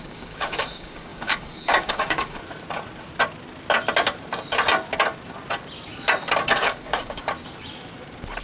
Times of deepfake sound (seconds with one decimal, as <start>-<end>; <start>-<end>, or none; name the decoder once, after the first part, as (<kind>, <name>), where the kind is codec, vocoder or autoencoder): 0.0-2.4 (codec, DAC); 6.5-7.2

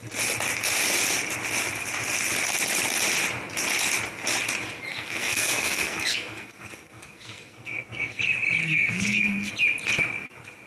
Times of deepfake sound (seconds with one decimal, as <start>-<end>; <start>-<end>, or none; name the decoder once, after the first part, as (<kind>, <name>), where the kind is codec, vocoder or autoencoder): 4.9-8.2 (codec, SNAC); 8.6-9.5